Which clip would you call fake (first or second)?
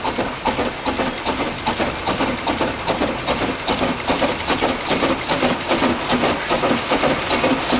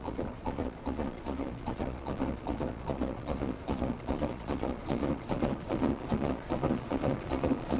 second